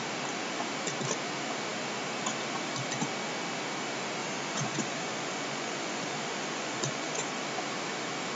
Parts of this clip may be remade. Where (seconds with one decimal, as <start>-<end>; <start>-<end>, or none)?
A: 4.2-7.3